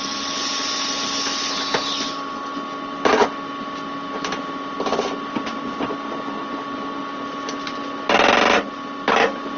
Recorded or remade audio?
recorded